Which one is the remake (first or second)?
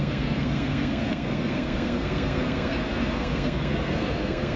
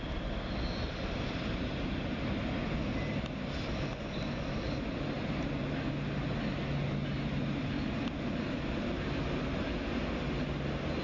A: first